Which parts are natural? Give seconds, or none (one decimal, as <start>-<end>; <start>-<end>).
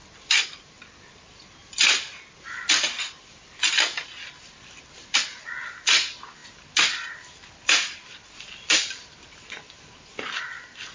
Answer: none